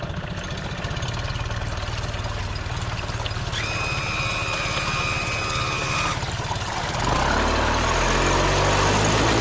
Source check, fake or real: real